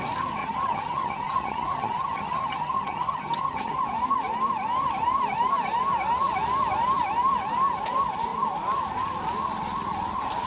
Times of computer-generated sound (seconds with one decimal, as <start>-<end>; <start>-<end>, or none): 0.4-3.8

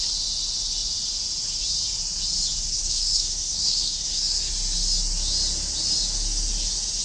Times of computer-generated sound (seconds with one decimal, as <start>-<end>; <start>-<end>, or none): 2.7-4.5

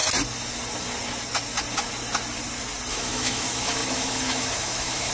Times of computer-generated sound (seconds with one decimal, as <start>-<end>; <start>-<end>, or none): 2.9-5.1

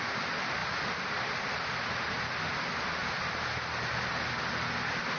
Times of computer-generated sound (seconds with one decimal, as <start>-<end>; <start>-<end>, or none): none

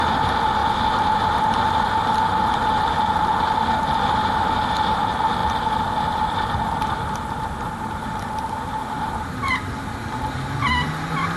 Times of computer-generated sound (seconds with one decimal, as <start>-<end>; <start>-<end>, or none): none

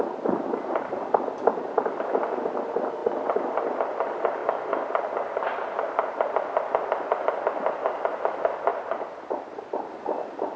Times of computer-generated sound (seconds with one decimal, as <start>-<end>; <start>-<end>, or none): 3.0-3.9; 8.7-9.9

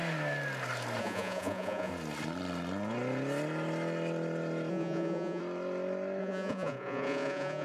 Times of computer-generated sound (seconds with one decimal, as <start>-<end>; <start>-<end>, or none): 1.0-1.9; 4.7-5.4; 6.2-7.6